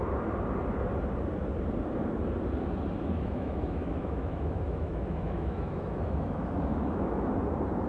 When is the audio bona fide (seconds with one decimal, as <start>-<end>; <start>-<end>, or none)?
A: 0.0-3.0; 7.3-7.9